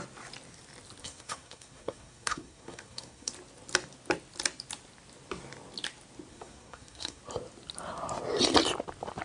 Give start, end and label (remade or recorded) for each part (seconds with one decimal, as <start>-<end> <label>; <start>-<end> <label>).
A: 0.0-1.0 recorded; 1.0-3.3 remade; 3.3-6.3 recorded; 6.3-7.2 remade; 7.2-9.2 recorded

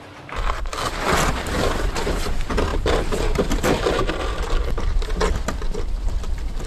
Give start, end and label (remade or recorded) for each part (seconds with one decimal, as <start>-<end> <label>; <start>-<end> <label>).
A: 0.0-6.7 recorded

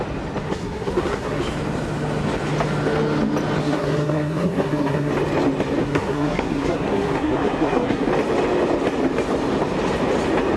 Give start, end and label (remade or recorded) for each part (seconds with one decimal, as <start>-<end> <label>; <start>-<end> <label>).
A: 0.0-0.5 recorded; 0.5-1.4 remade; 1.4-3.6 recorded; 3.6-5.1 remade; 5.1-5.8 recorded; 5.8-8.1 remade; 8.1-10.6 recorded

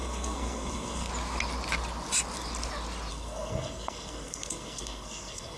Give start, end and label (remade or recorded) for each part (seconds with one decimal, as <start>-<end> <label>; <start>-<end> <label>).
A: 0.0-1.1 remade; 1.1-3.1 recorded; 3.1-5.6 remade

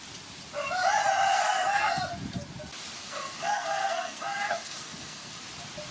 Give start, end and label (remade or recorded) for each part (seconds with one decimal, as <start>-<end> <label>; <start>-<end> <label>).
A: 0.0-1.3 recorded; 1.3-2.0 remade; 2.0-3.0 recorded; 3.0-5.4 remade; 5.4-5.9 recorded